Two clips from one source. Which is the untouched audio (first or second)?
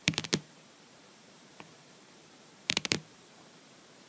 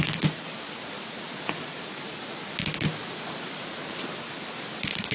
second